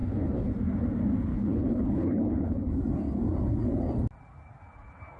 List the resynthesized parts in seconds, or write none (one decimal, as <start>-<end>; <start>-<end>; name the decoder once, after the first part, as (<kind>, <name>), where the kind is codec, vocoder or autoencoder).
0.0-0.5 (codec, HILCodec); 1.3-2.7